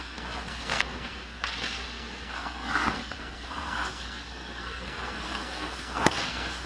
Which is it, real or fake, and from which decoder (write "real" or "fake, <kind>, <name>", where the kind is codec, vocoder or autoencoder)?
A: fake, codec, SNAC